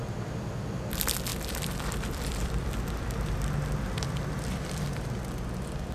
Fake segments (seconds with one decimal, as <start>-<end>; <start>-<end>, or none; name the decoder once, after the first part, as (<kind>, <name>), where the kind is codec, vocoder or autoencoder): 1.3-4.8 (vocoder, BigVGAN v2)